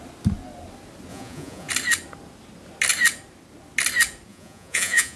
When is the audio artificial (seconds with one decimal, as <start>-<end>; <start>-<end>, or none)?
1.1-1.7; 4.3-5.2